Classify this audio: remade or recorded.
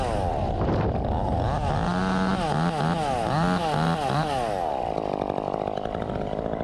recorded